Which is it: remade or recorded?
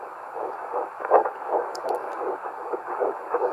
remade